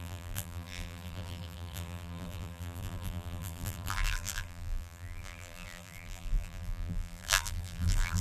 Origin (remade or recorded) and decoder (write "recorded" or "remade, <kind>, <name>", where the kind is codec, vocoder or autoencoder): remade, vocoder, BigVGAN v2